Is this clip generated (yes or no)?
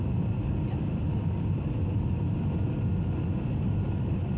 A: no